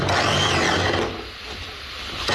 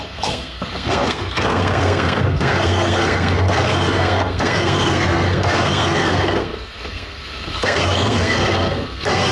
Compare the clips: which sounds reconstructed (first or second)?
second